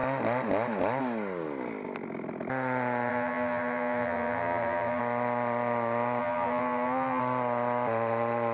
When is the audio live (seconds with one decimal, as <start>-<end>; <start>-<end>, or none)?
0.0-3.1; 5.0-6.2; 7.2-8.5